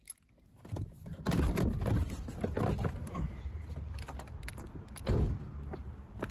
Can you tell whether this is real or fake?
real